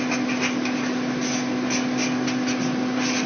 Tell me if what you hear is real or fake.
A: real